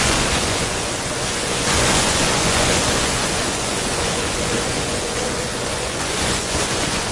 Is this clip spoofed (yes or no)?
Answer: yes